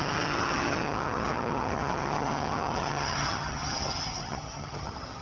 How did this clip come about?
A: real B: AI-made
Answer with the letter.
B